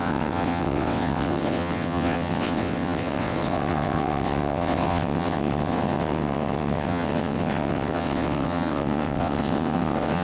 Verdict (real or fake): fake